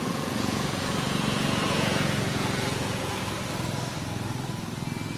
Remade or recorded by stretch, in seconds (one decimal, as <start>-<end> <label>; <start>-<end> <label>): 0.0-3.1 remade; 3.1-5.2 recorded

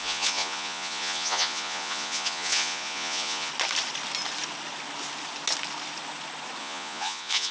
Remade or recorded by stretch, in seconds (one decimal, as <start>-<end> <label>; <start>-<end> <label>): 0.0-3.5 remade; 3.5-6.6 recorded; 6.6-7.5 remade

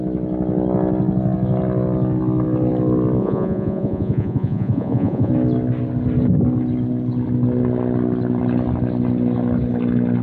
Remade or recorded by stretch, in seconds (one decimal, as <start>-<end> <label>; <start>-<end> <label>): 0.0-3.2 recorded; 3.2-5.3 remade; 5.3-10.2 recorded

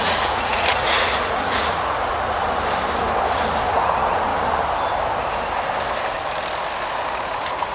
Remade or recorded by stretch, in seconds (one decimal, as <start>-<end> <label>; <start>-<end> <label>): 0.0-2.4 remade; 2.4-3.6 recorded; 3.6-4.3 remade; 4.3-6.9 recorded; 6.9-7.7 remade

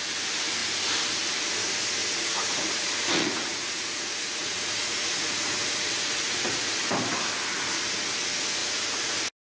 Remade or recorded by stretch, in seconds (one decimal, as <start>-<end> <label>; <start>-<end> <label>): 0.0-2.0 recorded; 2.0-6.8 remade; 6.8-8.6 recorded; 8.6-9.2 remade; 9.2-9.6 recorded

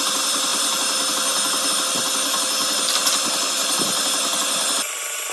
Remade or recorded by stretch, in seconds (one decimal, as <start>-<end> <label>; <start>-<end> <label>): 0.0-5.3 recorded